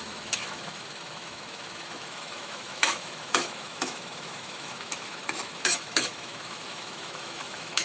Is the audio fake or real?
fake